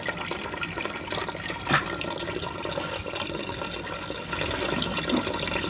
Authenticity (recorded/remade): recorded